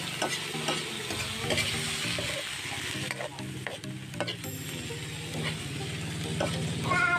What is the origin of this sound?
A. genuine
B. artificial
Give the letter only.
A